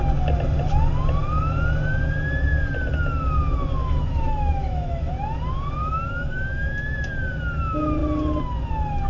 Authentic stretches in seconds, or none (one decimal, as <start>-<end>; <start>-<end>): 0.0-3.8; 5.1-5.8; 7.1-9.1